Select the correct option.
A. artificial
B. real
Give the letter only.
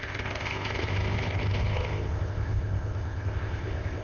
A